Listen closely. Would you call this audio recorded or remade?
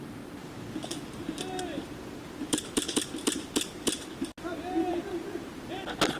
recorded